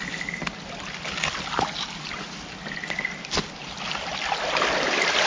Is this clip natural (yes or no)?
yes